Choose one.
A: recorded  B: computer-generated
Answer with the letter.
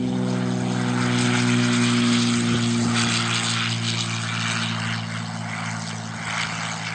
A